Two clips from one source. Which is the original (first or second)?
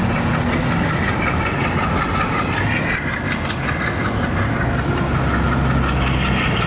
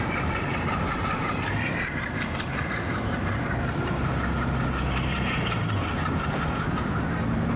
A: first